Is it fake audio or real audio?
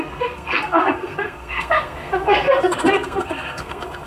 fake